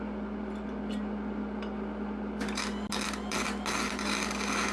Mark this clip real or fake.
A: real